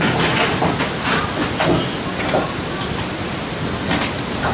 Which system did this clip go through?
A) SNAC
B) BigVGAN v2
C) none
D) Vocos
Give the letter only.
C